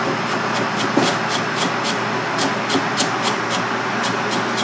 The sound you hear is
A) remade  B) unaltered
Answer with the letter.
B